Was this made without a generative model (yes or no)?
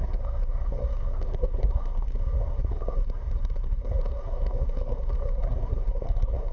no